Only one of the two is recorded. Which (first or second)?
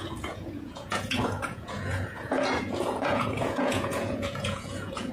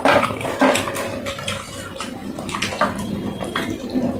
second